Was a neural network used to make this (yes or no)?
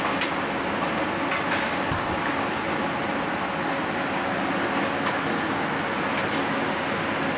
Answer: no